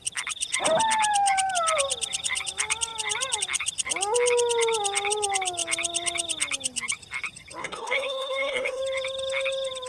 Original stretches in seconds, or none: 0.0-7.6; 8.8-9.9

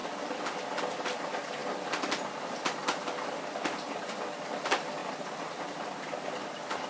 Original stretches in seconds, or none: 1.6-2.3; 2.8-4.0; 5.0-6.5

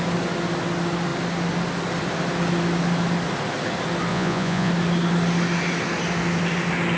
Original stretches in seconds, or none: 0.0-4.1; 4.7-7.0